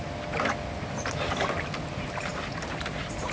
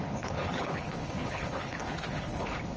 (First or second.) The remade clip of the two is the second